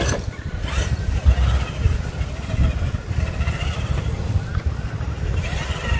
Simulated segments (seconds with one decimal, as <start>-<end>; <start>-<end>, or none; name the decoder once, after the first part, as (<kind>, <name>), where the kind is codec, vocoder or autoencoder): none